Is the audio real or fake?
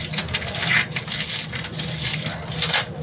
real